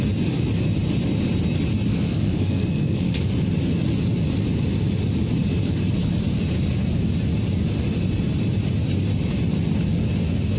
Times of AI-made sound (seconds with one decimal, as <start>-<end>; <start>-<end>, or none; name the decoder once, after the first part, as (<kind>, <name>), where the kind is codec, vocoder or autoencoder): 1.9-3.2 (codec, SNAC)